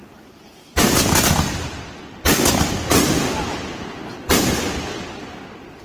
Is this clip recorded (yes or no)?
yes